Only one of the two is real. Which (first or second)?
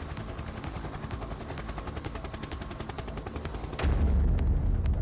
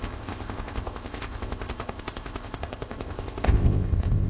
first